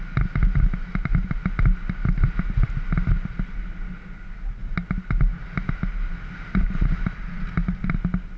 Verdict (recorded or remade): recorded